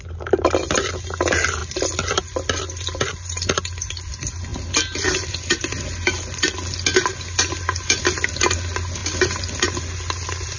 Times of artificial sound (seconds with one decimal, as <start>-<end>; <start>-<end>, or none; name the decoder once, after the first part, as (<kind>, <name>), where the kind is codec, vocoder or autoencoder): none